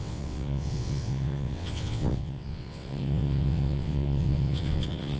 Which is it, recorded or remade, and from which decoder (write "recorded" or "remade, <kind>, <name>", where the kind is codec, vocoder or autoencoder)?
remade, vocoder, WaveNeXt